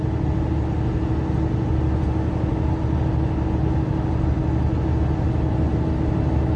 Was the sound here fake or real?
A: real